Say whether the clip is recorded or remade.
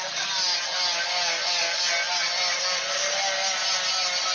recorded